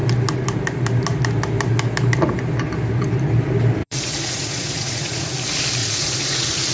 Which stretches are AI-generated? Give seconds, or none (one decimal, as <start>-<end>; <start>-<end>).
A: 3.8-5.3; 5.8-6.7